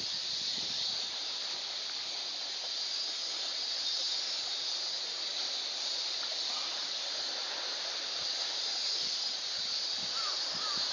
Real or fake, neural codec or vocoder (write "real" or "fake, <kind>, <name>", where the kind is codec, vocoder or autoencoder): real